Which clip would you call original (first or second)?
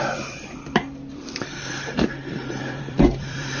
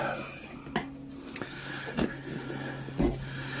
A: second